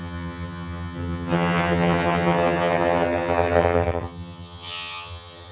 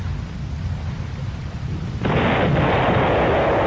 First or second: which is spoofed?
first